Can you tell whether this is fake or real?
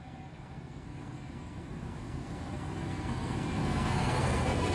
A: fake